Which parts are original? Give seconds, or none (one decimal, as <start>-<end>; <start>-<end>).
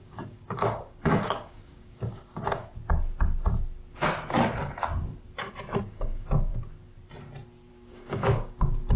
2.6-5.8; 6.5-7.7